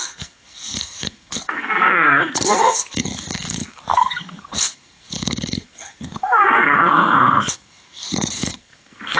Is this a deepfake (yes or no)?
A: yes